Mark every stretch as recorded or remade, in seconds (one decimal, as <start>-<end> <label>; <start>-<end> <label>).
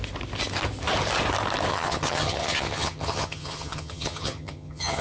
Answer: 0.0-1.7 recorded; 1.7-5.0 remade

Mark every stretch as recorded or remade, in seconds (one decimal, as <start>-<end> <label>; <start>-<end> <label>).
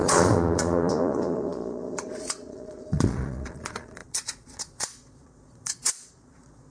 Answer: 0.0-6.7 remade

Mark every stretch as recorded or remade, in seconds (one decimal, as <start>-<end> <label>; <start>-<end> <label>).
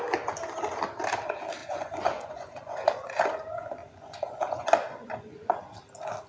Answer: 0.0-1.6 recorded; 1.6-3.1 remade; 3.1-3.8 recorded; 3.8-5.6 remade; 5.6-6.3 recorded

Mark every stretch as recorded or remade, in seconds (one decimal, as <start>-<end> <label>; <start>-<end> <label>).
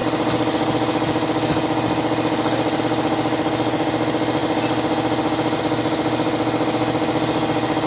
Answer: 0.0-7.9 recorded